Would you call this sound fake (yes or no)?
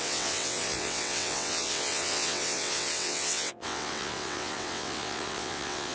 yes